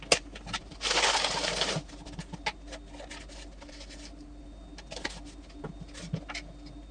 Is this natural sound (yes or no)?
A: yes